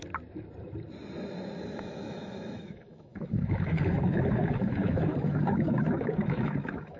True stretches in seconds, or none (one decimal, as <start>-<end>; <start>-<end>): 0.0-1.6